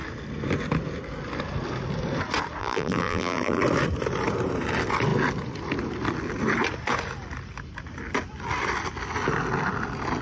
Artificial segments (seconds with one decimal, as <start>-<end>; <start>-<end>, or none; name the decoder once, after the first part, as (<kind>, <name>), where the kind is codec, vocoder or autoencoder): 2.6-3.6 (vocoder, BigVGAN v2)